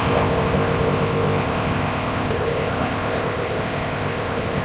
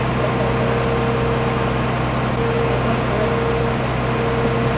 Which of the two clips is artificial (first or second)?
first